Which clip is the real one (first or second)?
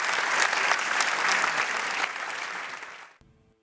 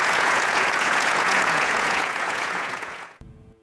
first